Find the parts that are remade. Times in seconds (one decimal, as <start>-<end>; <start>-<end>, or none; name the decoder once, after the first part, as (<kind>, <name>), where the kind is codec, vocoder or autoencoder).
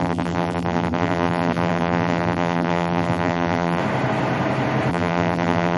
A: 0.0-3.8 (vocoder, BigVGAN v2); 4.9-5.8